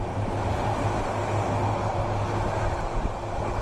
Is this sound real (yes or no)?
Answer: yes